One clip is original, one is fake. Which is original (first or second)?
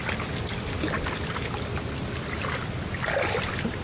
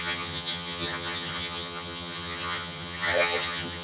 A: first